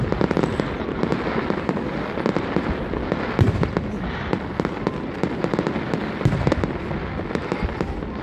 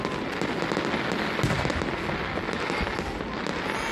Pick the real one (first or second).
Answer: second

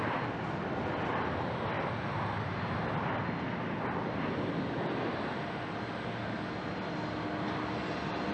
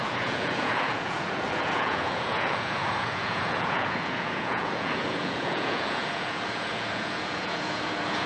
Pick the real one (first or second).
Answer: first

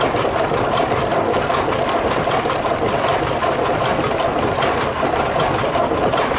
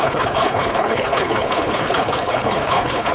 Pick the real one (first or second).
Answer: first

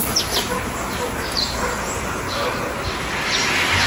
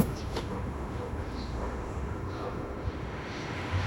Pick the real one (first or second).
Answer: first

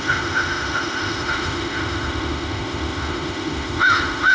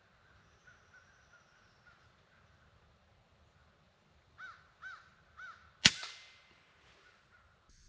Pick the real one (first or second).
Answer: second